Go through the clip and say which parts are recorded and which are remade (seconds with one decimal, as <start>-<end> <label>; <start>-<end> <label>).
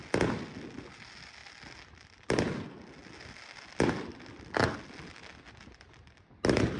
0.0-6.8 recorded